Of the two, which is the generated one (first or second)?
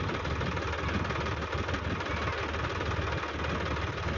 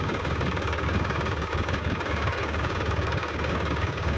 second